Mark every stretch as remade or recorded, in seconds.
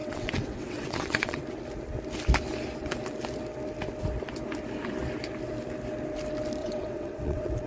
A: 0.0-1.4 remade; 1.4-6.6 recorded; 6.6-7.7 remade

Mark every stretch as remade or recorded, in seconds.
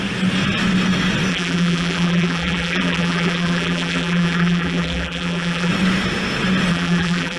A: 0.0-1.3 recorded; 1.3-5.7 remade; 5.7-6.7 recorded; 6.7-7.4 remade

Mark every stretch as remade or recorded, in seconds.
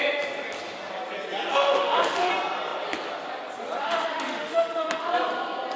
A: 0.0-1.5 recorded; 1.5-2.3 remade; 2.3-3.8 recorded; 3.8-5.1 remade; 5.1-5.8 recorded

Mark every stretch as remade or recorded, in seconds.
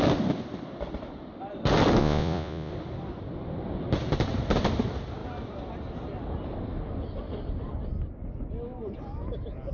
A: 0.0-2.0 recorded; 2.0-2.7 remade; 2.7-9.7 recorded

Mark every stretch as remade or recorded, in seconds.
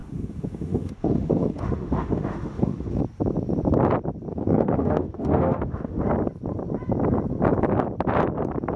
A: 0.0-3.0 remade; 3.0-4.3 recorded; 4.3-6.0 remade; 6.0-8.8 recorded